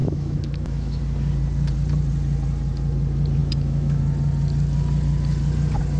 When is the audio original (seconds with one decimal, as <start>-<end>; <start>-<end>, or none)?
1.0-3.4; 4.0-6.0